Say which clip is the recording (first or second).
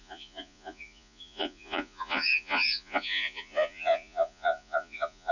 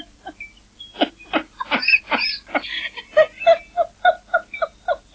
second